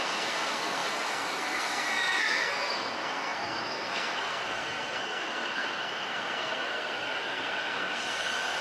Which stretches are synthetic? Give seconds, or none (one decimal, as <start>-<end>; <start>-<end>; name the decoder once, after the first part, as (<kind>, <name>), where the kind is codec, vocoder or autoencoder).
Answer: 0.0-8.6 (codec, SNAC)